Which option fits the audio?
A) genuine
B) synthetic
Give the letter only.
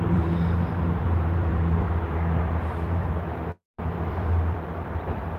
B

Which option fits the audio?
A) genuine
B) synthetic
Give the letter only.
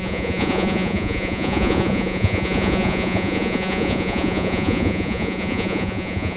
B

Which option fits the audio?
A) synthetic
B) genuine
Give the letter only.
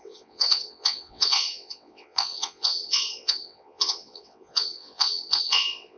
A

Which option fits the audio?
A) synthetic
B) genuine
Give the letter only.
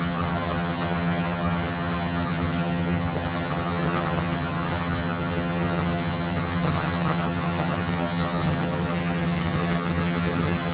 A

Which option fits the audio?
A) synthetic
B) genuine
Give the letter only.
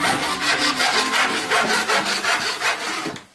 B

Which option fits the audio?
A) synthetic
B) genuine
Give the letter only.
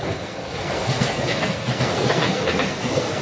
A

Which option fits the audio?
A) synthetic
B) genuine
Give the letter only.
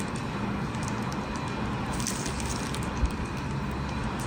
B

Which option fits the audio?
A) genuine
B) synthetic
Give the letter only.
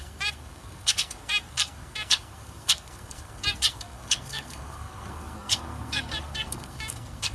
B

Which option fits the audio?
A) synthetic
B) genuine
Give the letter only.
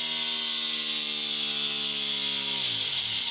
B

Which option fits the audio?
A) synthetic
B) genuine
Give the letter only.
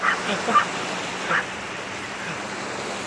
B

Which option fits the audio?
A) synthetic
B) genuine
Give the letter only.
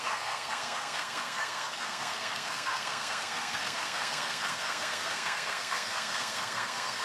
A